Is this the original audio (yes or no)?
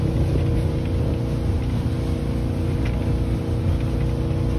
yes